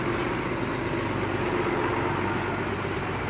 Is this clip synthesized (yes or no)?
no